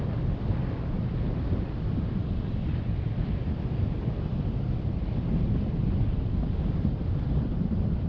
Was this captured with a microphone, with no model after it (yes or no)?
yes